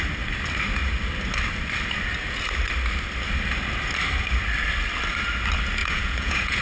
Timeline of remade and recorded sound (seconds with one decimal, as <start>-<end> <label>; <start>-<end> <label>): 0.0-5.8 recorded; 5.8-6.6 remade

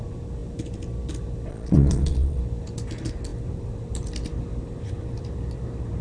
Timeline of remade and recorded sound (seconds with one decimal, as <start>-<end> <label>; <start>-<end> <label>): 0.0-1.5 recorded; 1.5-2.4 remade; 2.4-6.0 recorded

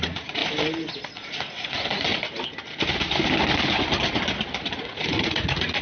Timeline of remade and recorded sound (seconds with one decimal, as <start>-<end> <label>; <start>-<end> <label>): 0.0-0.4 remade; 0.4-1.1 recorded; 1.1-2.1 remade; 2.1-4.6 recorded; 4.6-5.8 remade

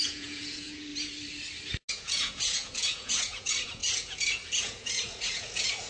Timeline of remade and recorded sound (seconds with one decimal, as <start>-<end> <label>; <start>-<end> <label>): 0.0-0.9 remade; 0.9-1.9 recorded; 1.9-5.9 remade

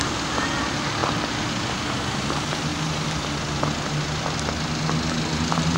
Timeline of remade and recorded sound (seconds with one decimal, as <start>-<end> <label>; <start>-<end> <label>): 0.0-5.8 recorded

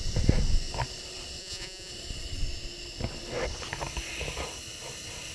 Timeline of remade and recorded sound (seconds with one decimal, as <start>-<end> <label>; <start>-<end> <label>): 0.0-1.4 recorded; 1.4-1.9 remade; 1.9-5.3 recorded

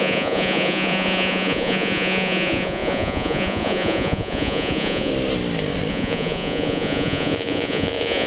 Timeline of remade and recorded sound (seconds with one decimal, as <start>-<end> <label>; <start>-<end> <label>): 0.0-5.1 remade; 5.1-5.9 recorded; 5.9-8.3 remade